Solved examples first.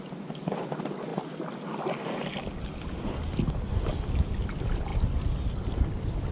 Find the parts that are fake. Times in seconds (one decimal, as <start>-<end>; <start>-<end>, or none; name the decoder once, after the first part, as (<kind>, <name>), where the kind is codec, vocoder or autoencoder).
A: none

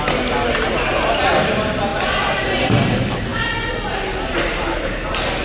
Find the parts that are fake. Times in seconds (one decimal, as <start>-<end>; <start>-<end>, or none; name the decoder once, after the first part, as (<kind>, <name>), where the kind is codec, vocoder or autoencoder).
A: none

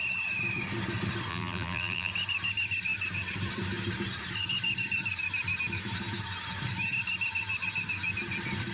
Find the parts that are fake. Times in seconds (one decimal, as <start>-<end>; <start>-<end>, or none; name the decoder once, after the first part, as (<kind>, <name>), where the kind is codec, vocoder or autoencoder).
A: 1.3-2.1 (vocoder, BigVGAN v2)

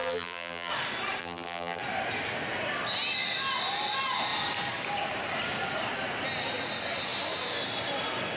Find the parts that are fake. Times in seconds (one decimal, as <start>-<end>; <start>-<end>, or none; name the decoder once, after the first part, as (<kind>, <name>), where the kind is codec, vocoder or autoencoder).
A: 0.0-0.7 (vocoder, BigVGAN v2); 1.2-1.8

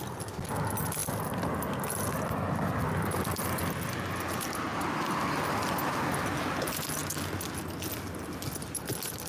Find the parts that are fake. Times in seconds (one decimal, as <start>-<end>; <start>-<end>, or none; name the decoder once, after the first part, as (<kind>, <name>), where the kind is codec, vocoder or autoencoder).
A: none

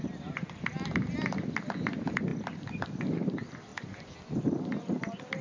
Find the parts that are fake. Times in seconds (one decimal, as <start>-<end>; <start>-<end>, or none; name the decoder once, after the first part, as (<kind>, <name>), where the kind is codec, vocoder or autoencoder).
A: 2.3-3.0 (vocoder, BigVGAN v2); 3.7-4.3

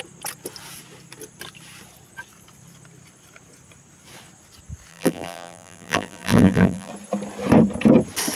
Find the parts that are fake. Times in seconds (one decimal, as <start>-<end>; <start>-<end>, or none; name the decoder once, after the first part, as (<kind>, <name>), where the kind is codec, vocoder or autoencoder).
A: 4.9-6.9 (vocoder, BigVGAN v2)